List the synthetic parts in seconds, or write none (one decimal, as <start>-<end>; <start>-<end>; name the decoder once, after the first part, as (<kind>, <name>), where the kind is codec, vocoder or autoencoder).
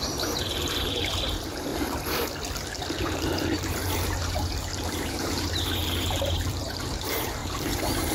0.0-1.7 (vocoder, BigVGAN v2); 3.0-8.1